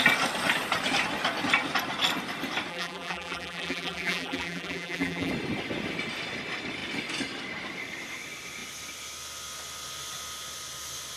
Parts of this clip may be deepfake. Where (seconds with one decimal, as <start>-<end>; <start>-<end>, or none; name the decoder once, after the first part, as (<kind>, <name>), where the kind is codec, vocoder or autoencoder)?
2.7-5.3 (vocoder, BigVGAN v2)